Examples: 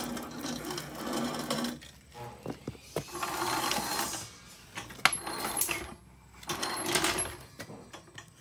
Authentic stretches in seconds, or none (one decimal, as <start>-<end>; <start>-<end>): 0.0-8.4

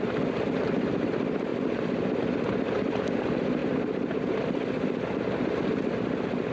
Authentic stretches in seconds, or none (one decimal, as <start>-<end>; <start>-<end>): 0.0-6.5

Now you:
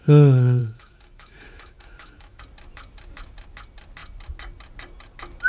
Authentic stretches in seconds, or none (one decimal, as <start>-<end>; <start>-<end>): 0.0-0.6; 2.4-5.5

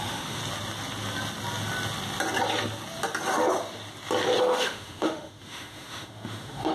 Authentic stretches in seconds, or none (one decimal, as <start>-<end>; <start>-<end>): 0.4-4.4